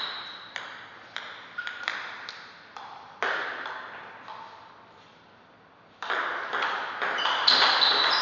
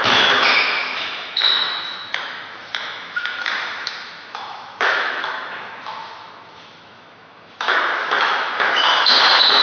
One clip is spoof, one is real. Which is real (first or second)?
first